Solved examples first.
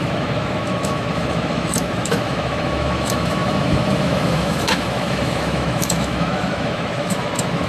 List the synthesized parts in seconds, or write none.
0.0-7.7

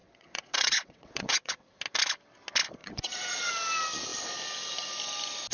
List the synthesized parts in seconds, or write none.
0.0-1.7; 2.8-3.5

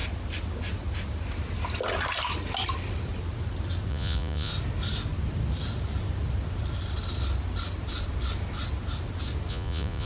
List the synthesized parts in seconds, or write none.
3.9-4.5; 9.5-10.1

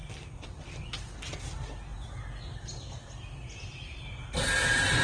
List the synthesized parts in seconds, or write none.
none

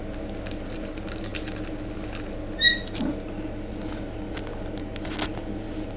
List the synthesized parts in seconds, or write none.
none

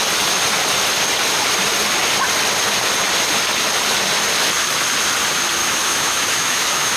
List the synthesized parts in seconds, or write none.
5.6-7.0

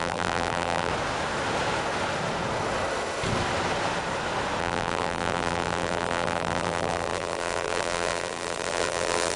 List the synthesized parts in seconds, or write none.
0.0-0.9; 4.6-9.4